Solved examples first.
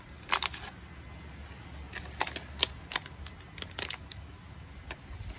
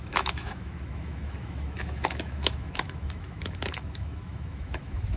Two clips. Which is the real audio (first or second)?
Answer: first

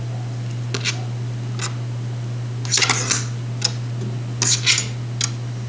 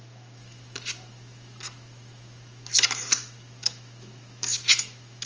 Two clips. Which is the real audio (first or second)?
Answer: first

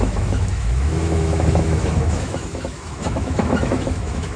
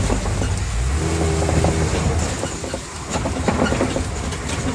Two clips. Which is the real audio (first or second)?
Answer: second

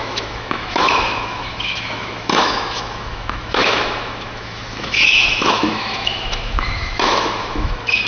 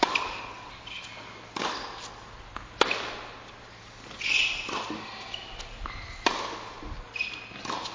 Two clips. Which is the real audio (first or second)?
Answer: second